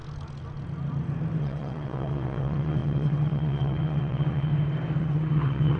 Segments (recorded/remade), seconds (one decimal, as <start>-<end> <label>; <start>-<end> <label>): 0.0-1.4 recorded; 1.4-4.5 remade; 4.5-5.0 recorded; 5.0-5.8 remade